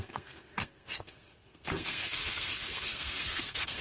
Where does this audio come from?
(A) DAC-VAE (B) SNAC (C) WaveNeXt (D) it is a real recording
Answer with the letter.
B